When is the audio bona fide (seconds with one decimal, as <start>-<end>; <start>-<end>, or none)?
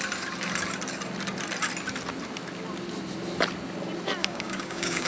0.0-4.2